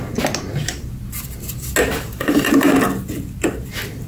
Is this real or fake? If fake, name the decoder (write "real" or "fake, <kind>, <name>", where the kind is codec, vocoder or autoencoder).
real